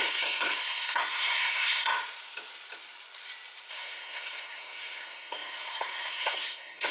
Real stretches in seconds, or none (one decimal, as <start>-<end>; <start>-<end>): 1.9-3.7